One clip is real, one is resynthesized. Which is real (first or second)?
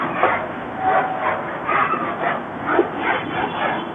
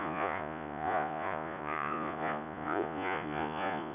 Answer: first